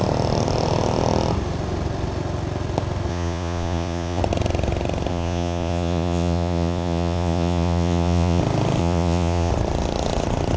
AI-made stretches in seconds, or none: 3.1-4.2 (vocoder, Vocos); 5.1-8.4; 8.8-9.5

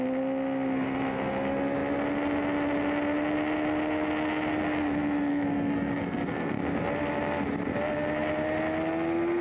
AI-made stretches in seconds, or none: 5.3-6.6 (codec, SNAC)

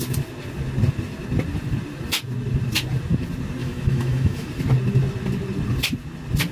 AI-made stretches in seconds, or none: 3.6-4.5 (autoencoder, DAC-VAE)

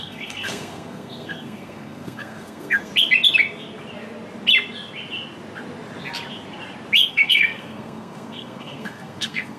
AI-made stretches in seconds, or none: 0.0-2.9 (codec, SNAC); 7.1-9.6

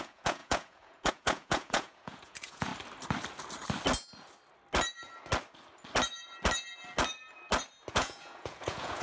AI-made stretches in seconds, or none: 0.0-2.7 (vocoder, Vocos); 7.9-9.0

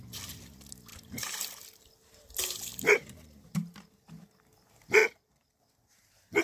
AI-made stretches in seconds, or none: 0.9-1.9 (vocoder, BigVGAN v2); 2.7-3.8; 5.0-5.6

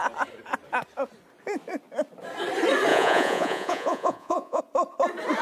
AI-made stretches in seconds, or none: 2.9-4.6 (vocoder, Vocos)